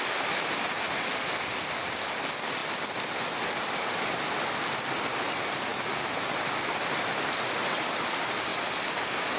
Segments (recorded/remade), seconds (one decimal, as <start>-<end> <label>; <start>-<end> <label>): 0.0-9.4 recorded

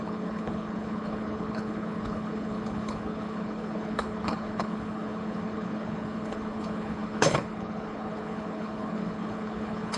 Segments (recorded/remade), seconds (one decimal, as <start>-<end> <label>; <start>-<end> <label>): 0.0-10.0 remade

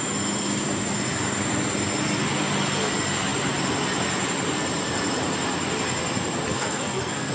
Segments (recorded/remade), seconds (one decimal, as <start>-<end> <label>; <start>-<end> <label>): 0.0-6.5 recorded; 6.5-7.3 remade

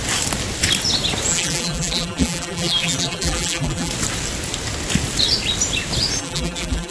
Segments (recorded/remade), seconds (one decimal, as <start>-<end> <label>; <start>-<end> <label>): 0.0-1.3 recorded; 1.3-3.9 remade; 3.9-6.2 recorded; 6.2-6.9 remade

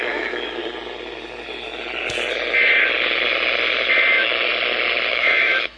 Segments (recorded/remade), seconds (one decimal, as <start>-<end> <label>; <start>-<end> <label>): 0.0-0.6 remade; 0.6-4.1 recorded; 4.1-4.5 remade; 4.5-5.1 recorded; 5.1-5.8 remade

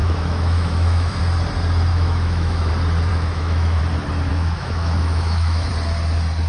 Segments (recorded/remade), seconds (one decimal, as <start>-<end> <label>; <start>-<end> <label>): 0.0-1.2 remade; 1.2-1.9 recorded; 1.9-2.7 remade; 2.7-3.1 recorded; 3.1-3.8 remade; 3.8-4.3 recorded; 4.3-5.7 remade; 5.7-6.5 recorded

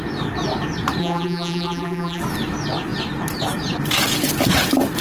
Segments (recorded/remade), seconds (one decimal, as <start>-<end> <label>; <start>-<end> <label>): 0.0-1.0 recorded; 1.0-2.2 remade; 2.2-5.0 recorded

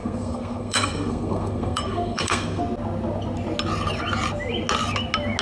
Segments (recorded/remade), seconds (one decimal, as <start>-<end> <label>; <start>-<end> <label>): 0.0-2.6 remade; 2.6-5.4 recorded